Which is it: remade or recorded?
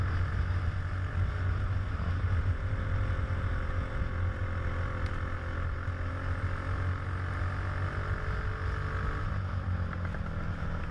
recorded